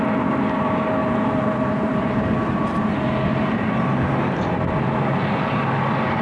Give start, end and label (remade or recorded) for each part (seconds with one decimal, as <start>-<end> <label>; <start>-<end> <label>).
0.0-1.0 recorded; 1.0-4.7 remade; 4.7-6.2 recorded